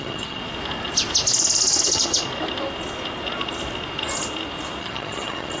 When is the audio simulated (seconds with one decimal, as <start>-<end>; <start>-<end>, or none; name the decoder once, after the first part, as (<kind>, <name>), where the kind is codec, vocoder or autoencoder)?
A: 0.0-0.4 (vocoder, HiFi-GAN); 1.8-2.2; 4.8-5.6